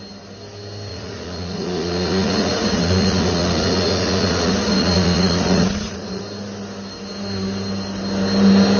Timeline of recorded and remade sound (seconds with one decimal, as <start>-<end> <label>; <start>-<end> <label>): 0.0-0.9 recorded; 0.9-6.2 remade; 6.2-8.8 recorded